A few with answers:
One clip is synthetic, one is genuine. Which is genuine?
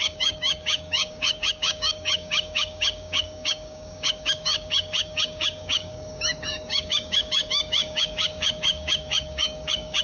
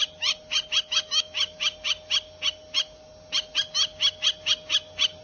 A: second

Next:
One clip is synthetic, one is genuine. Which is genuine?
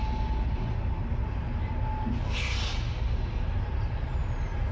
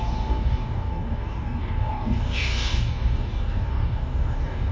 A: first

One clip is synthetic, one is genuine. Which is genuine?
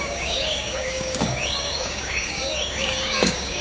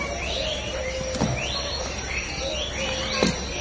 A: second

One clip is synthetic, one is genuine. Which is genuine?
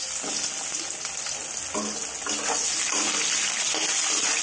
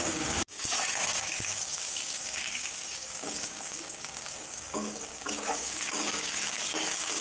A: first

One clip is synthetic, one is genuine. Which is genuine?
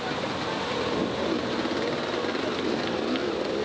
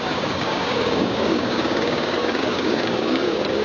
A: first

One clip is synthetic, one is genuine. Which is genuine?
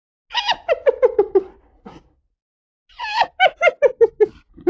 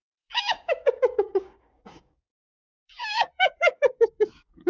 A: first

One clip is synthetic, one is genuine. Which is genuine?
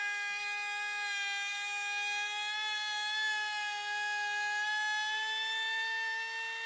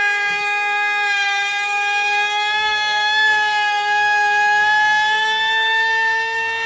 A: first